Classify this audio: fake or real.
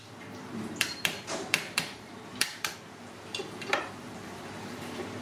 fake